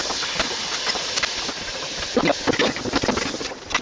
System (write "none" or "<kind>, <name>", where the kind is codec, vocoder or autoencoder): none